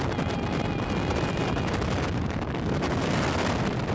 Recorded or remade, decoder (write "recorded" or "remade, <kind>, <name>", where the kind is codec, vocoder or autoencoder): recorded